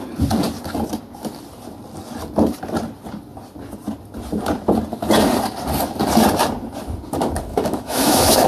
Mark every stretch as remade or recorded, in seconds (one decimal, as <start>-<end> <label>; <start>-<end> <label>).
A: 0.0-7.5 recorded; 7.5-8.5 remade